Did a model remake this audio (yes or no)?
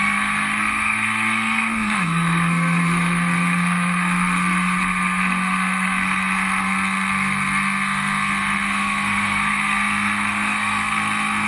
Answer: yes